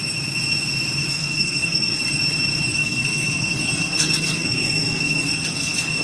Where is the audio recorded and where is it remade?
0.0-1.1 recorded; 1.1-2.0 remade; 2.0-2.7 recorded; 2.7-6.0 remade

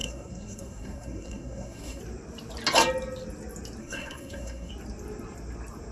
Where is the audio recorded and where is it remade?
0.0-2.0 remade; 2.0-3.8 recorded; 3.8-4.7 remade; 4.7-5.9 recorded